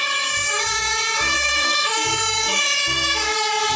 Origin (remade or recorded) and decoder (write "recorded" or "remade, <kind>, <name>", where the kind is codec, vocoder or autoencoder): remade, autoencoder, DAC-VAE